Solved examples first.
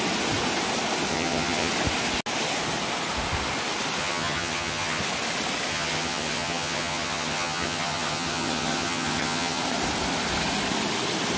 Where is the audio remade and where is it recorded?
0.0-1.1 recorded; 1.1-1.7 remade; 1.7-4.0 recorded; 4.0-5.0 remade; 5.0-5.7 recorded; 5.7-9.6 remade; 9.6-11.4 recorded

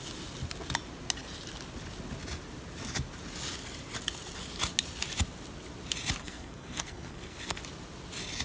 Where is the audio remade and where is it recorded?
0.0-6.2 recorded; 6.2-7.6 remade; 7.6-8.4 recorded

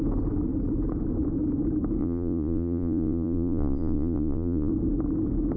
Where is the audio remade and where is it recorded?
0.0-2.0 recorded; 2.0-4.7 remade; 4.7-5.6 recorded

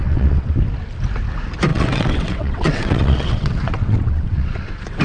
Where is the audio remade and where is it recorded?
0.0-0.6 remade; 0.6-1.7 recorded; 1.7-5.0 remade

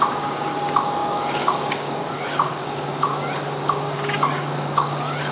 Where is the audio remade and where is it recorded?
0.0-3.1 remade; 3.1-3.7 recorded; 3.7-5.3 remade

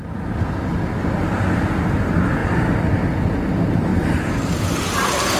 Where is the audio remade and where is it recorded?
0.0-2.4 recorded; 2.4-3.1 remade; 3.1-3.9 recorded; 3.9-4.7 remade; 4.7-5.4 recorded

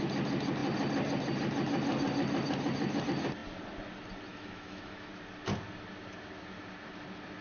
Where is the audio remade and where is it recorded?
0.0-4.3 recorded; 4.3-5.1 remade; 5.1-7.4 recorded